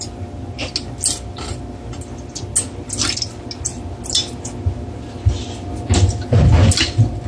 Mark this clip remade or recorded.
recorded